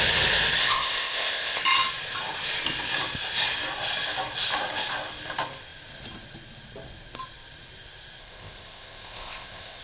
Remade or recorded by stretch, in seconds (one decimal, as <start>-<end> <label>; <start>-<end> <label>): 0.0-0.6 recorded; 0.6-1.6 remade; 1.6-8.2 recorded; 8.2-9.8 remade